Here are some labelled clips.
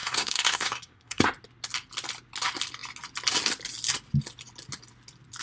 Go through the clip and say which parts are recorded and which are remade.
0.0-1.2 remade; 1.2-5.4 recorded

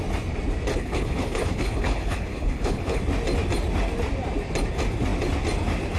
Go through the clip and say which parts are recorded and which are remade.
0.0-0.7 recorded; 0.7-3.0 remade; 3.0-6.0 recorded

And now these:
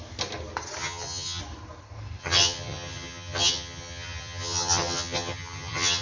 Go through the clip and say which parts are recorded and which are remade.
0.0-0.8 recorded; 0.8-1.4 remade; 1.4-2.2 recorded; 2.2-6.0 remade

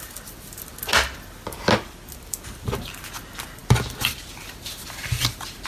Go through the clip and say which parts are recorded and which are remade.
0.0-5.7 recorded

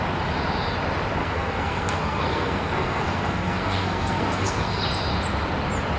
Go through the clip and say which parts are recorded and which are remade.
0.0-1.2 recorded; 1.2-4.8 remade; 4.8-6.0 recorded

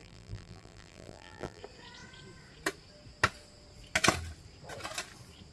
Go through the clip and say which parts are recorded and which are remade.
0.0-1.6 remade; 1.6-5.5 recorded

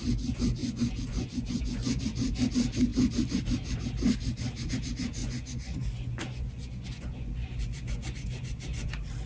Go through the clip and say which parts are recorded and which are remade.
0.0-0.6 recorded; 0.6-2.0 remade; 2.0-5.2 recorded; 5.2-8.9 remade; 8.9-9.3 recorded

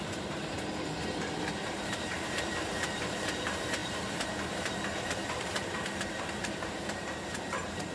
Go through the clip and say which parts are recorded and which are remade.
0.0-7.9 remade